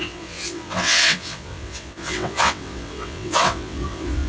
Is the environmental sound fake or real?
fake